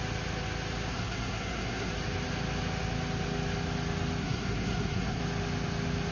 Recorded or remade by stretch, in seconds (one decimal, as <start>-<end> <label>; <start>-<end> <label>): 0.0-0.9 recorded; 0.9-1.9 remade; 1.9-4.2 recorded; 4.2-5.2 remade; 5.2-6.1 recorded